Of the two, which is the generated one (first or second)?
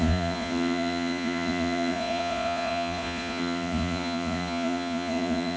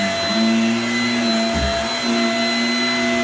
first